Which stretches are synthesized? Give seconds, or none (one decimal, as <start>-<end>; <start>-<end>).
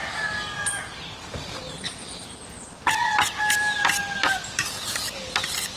none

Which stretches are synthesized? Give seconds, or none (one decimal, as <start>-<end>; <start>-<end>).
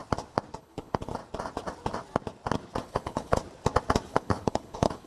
0.6-1.2; 2.8-3.4; 4.1-5.1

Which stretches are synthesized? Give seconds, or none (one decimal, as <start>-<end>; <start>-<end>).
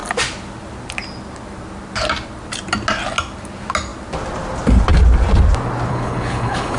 5.9-6.8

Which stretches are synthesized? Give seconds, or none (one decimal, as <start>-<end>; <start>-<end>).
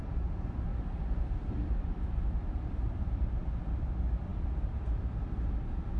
0.0-0.7; 1.5-6.0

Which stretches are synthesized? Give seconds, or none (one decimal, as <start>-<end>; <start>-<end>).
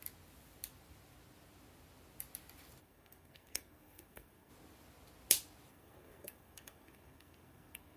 2.8-4.5; 5.7-8.0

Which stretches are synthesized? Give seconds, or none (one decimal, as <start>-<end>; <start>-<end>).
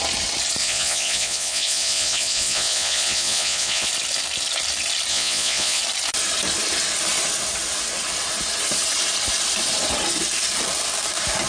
0.6-3.9; 5.1-5.8